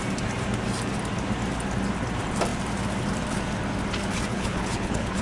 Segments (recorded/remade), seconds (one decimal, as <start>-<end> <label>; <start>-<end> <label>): 0.0-4.3 recorded; 4.3-5.2 remade